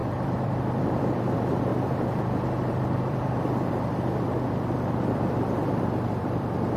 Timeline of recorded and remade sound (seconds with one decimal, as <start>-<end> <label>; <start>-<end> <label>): 0.0-6.8 remade